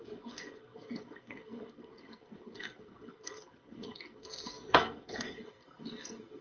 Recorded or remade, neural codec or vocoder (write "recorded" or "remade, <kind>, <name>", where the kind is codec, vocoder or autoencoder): remade, codec, SNAC